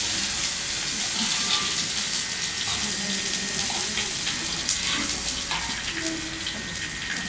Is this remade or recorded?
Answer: recorded